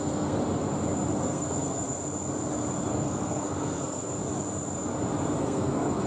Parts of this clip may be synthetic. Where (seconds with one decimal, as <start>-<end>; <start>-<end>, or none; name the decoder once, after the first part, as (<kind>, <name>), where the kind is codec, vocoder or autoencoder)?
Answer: 0.0-0.4 (codec, SNAC); 1.2-2.0; 2.9-4.2; 5.4-6.1